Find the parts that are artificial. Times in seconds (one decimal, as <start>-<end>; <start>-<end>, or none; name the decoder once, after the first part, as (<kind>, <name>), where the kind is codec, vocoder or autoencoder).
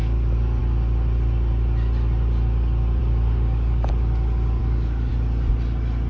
0.0-0.6 (codec, DAC); 3.0-3.9; 4.6-5.1